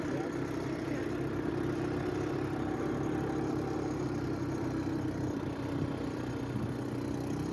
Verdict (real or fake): real